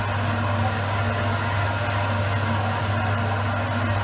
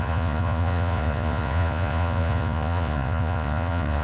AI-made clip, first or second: second